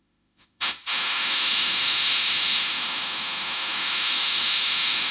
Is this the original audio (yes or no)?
no